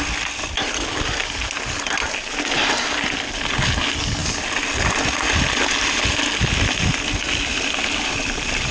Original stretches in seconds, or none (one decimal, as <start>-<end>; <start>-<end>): 0.0-8.7